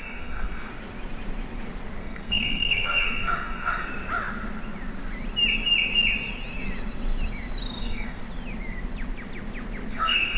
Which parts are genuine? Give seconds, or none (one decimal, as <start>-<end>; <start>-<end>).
0.7-2.0; 3.9-7.8; 8.2-9.9